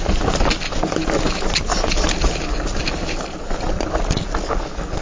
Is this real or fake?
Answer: real